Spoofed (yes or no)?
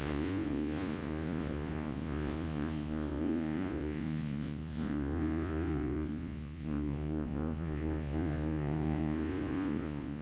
yes